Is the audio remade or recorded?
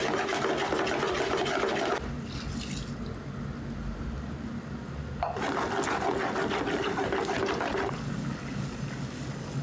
recorded